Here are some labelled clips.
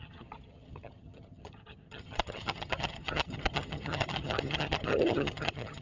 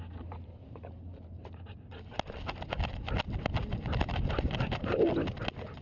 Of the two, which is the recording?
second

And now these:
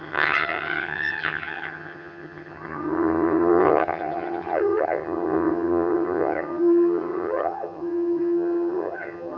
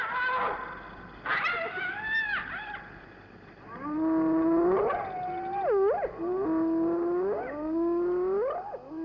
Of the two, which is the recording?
second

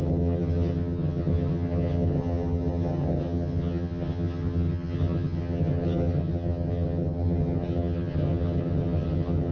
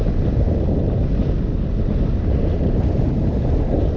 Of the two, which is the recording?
second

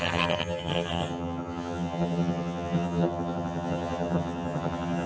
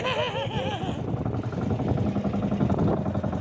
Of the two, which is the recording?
second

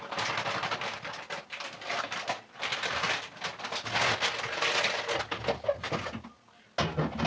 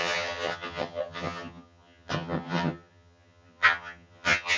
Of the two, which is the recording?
first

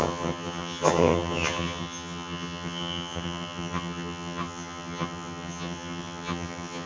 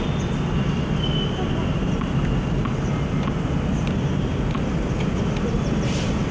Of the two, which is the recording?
second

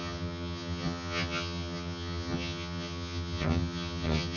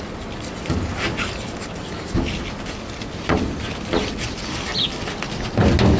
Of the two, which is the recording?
second